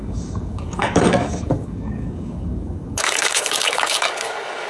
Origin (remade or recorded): remade